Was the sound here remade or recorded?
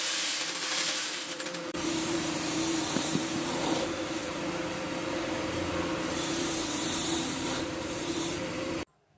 remade